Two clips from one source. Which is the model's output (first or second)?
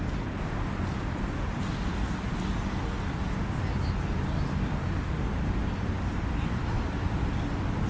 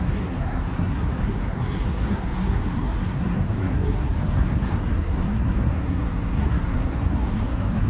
second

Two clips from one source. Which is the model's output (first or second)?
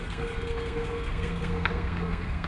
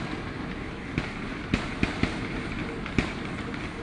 first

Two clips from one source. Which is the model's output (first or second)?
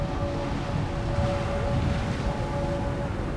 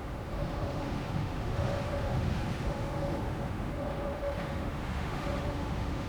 second